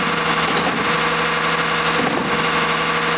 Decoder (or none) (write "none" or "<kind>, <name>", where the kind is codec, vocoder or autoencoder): none